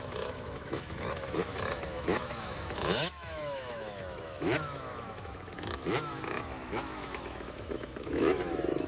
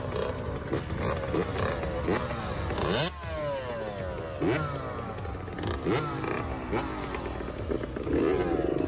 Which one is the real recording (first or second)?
second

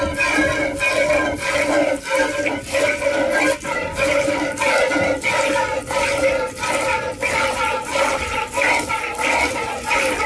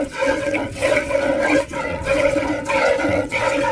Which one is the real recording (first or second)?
first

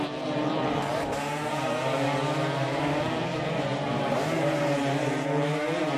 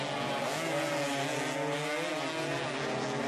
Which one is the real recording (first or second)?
second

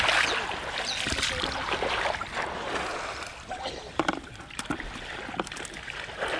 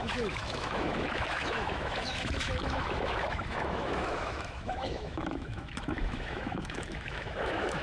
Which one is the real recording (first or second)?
first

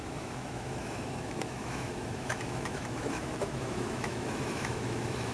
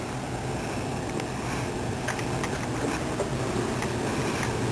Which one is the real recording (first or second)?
second